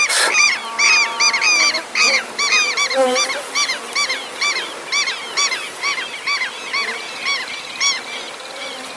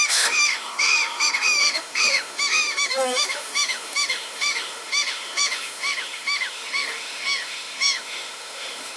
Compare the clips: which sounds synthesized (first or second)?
second